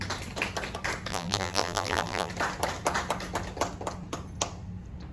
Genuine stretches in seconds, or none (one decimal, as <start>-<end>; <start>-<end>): 0.0-1.1; 2.3-5.1